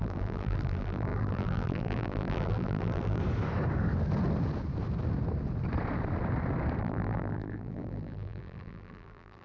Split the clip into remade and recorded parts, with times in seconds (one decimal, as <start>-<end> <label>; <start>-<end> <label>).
0.0-3.2 remade; 3.2-6.8 recorded; 6.8-9.4 remade